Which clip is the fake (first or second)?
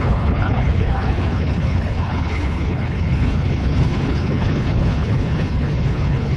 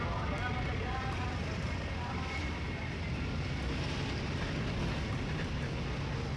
first